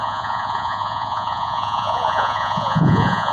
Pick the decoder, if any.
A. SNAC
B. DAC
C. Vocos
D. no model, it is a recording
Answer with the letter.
C